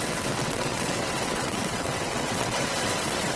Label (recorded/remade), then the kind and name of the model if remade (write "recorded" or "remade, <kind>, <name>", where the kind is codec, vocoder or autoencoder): remade, vocoder, WaveNeXt